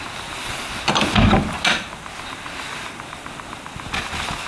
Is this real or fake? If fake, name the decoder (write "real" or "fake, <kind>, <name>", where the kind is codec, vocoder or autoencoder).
real